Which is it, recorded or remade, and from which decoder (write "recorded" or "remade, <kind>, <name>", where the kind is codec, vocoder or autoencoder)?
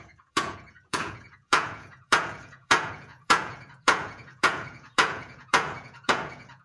remade, vocoder, Vocos